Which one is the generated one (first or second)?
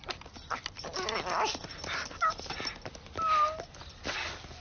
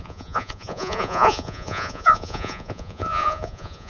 second